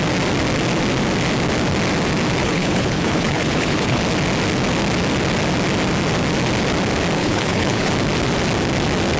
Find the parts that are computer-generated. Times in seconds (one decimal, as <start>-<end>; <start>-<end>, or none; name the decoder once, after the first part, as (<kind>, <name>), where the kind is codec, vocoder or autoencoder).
2.4-4.0 (codec, HILCodec); 7.2-7.9